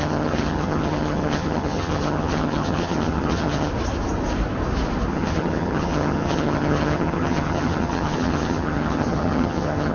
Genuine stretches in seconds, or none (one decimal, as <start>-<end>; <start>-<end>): 3.7-5.1